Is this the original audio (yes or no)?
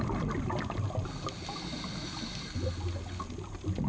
yes